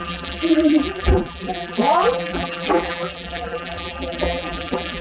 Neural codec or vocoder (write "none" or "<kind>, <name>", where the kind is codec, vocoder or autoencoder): vocoder, BigVGAN v2